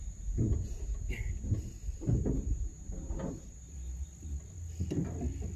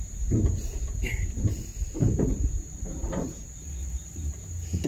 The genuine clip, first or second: first